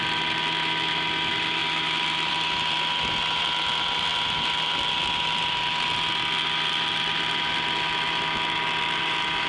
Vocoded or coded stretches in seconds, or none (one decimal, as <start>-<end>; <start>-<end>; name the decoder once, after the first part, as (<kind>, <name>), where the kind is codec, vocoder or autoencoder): none